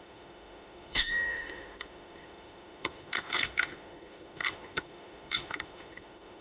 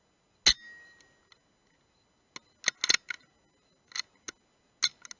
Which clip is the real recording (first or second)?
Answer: second